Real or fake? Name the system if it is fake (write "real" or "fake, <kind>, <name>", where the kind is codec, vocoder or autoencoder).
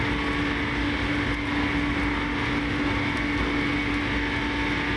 real